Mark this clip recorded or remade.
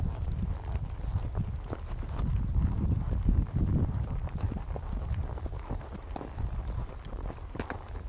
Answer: recorded